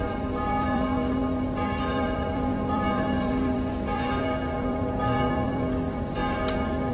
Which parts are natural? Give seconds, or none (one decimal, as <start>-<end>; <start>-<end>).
6.2-6.9